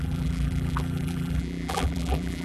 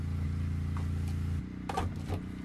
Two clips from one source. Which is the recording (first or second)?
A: second